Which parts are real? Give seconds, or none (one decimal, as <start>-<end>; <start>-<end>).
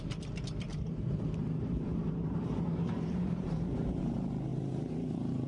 0.0-0.7; 4.0-4.5